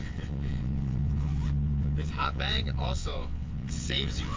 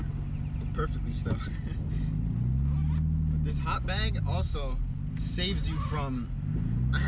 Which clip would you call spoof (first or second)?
first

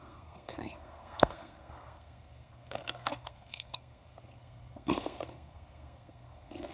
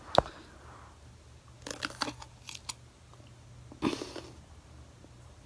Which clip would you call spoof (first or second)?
first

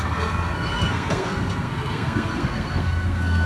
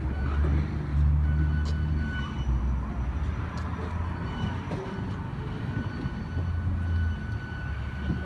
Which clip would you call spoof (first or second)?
first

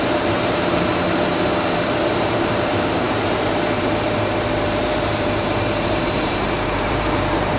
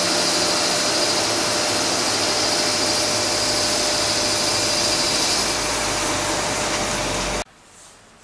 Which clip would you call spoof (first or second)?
first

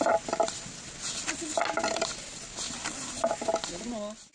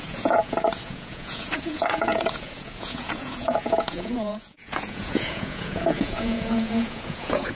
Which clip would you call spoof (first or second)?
second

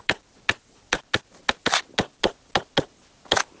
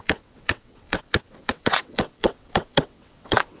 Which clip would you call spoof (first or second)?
second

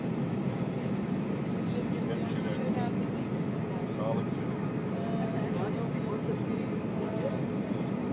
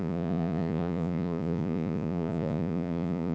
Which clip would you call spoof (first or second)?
second